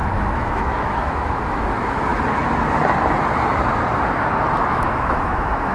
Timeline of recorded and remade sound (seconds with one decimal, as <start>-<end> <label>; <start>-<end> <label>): 0.0-2.1 remade; 2.1-4.6 recorded; 4.6-5.7 remade